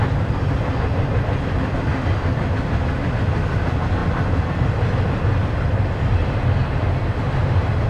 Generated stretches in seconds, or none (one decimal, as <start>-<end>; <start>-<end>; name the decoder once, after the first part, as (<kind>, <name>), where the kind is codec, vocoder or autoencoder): none